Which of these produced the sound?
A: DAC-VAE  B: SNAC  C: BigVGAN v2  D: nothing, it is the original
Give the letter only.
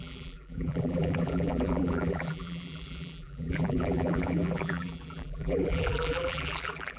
C